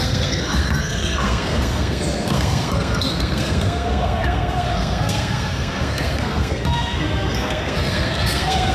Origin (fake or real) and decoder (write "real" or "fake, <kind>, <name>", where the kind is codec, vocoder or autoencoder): fake, codec, SNAC